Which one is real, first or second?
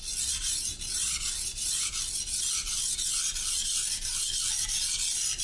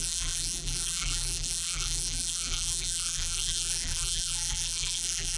first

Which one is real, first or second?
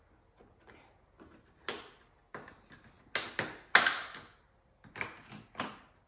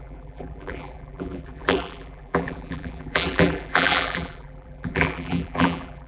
first